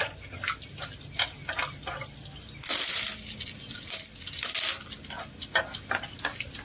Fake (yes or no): no